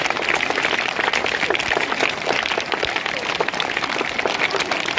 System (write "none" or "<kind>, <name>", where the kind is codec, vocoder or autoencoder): none